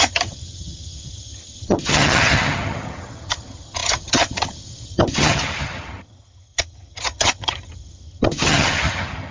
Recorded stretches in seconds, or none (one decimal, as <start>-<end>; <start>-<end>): none